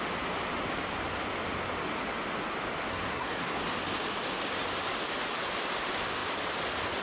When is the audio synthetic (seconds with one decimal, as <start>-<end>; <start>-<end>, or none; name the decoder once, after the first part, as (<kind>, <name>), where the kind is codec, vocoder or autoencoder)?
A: 2.9-3.6 (codec, SNAC)